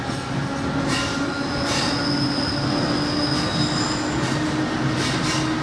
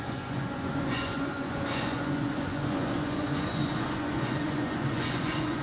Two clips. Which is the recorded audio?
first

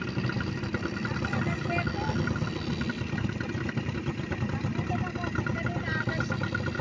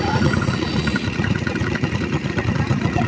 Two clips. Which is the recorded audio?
first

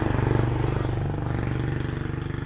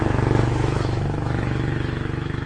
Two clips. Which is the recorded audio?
first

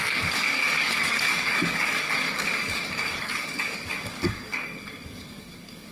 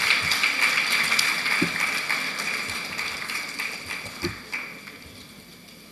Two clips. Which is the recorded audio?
second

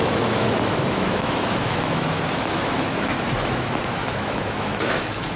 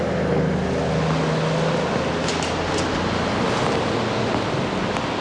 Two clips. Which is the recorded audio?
second